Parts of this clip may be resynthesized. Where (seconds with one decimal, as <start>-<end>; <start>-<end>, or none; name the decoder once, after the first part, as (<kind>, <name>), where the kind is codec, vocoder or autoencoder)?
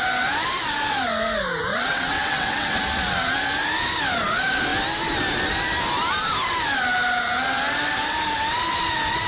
1.7-2.8 (vocoder, WaveNeXt)